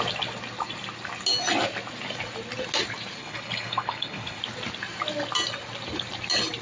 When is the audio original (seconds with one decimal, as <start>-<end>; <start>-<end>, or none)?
0.0-3.2; 4.4-6.6